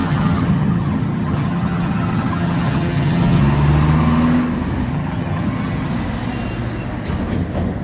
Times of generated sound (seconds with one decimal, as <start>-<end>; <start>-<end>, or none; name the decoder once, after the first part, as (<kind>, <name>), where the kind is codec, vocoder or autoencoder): 0.0-3.4 (vocoder, HiFi-GAN); 4.9-5.9